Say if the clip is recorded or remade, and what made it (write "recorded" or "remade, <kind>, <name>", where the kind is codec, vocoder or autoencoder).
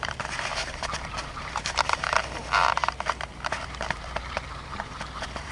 remade, vocoder, BigVGAN v2